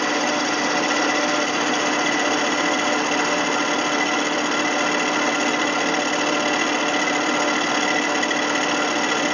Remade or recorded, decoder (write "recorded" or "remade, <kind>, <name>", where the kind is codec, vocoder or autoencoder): recorded